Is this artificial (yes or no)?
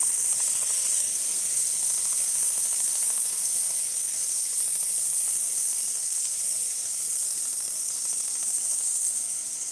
yes